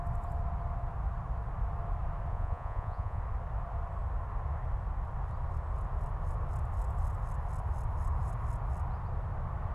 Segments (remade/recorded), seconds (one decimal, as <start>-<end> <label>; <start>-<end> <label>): 0.0-2.3 recorded; 2.3-3.2 remade; 3.2-9.7 recorded